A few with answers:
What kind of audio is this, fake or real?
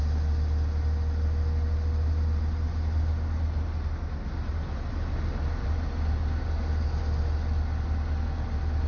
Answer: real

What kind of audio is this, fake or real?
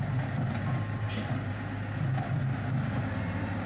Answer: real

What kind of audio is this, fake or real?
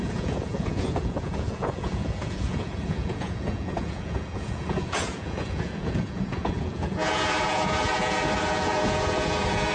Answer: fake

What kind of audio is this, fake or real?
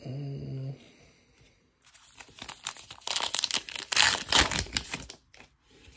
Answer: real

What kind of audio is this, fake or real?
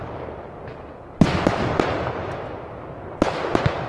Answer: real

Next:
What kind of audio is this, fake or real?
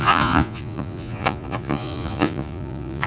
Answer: fake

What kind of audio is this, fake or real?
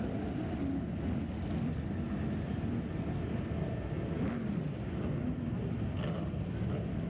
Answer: real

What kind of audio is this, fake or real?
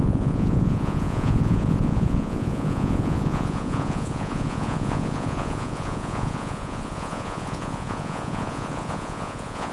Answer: fake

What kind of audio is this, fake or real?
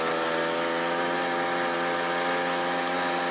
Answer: real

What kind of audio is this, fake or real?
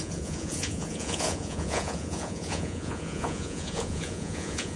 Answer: fake